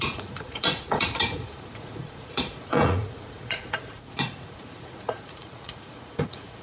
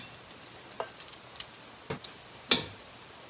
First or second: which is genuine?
second